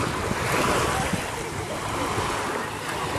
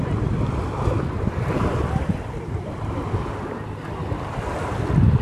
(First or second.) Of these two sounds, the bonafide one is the first